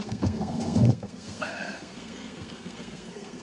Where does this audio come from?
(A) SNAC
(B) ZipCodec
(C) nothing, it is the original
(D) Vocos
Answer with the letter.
A